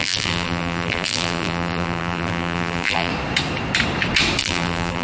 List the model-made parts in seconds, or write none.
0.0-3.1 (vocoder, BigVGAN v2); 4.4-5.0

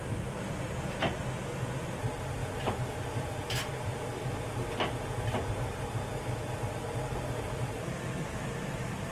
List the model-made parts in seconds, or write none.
2.4-4.5 (vocoder, BigVGAN v2)

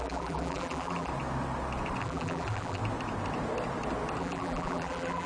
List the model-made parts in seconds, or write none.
0.0-1.1 (vocoder, BigVGAN v2); 2.0-2.8; 4.2-5.3